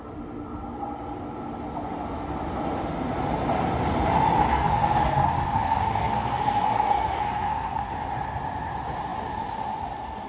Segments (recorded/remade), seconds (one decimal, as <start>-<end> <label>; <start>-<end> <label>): 0.0-4.5 recorded; 4.5-7.9 remade; 7.9-10.3 recorded